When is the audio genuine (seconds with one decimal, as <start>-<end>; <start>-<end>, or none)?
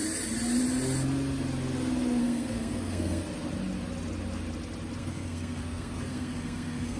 0.0-2.2; 3.2-5.0